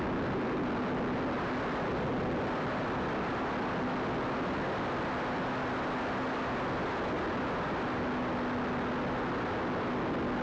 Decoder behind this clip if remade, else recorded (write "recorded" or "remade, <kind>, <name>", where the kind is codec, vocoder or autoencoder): recorded